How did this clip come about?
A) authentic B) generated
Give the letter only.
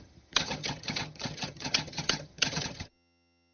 B